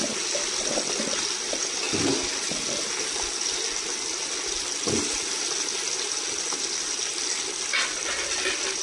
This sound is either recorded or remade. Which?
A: recorded